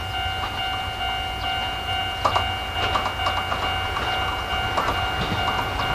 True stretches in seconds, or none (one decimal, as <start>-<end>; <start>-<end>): 0.0-5.9